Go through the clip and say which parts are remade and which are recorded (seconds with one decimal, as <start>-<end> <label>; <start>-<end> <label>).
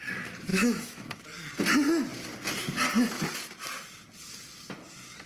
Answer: 0.0-0.5 recorded; 0.5-1.2 remade; 1.2-5.3 recorded